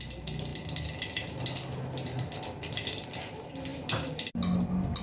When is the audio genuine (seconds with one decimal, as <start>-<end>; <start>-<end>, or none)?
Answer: 0.0-5.0